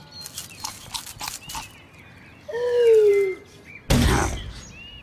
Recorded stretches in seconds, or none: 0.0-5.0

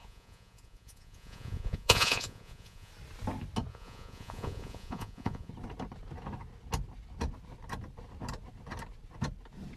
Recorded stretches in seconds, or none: 2.9-3.7; 5.5-9.8

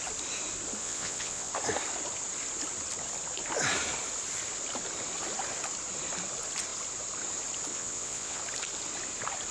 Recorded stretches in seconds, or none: 0.0-0.8; 1.5-7.7; 8.4-9.5

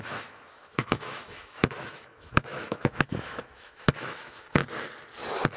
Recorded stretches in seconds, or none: 4.6-5.6

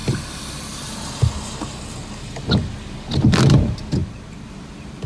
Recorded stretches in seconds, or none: 0.0-5.1

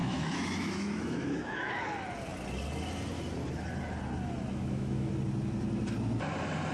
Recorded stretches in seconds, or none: 1.7-4.5; 5.1-6.7

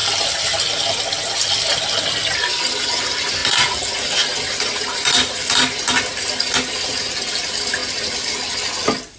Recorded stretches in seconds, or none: 0.0-9.2

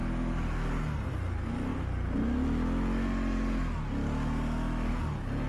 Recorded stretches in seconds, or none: 0.0-5.5